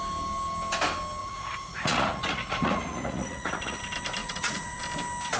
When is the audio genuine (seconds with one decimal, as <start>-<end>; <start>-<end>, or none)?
0.0-1.2; 3.8-4.2; 4.8-5.4